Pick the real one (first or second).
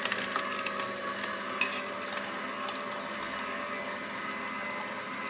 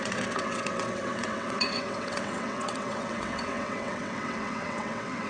first